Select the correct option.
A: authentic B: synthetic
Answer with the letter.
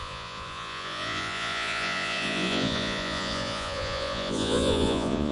B